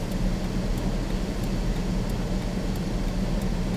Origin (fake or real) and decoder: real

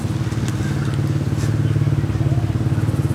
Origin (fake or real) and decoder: real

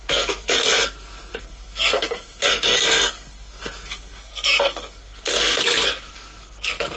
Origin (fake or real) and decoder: fake, codec, SNAC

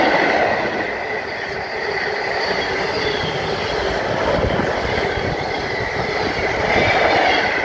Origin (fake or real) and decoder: real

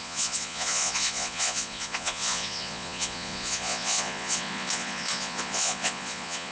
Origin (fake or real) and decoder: fake, vocoder, Vocos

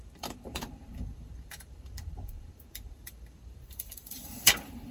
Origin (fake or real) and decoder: fake, vocoder, BigVGAN v2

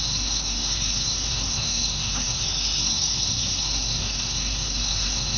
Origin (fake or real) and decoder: fake, codec, SNAC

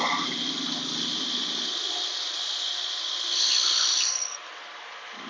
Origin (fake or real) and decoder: real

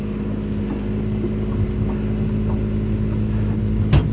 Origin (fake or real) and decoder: real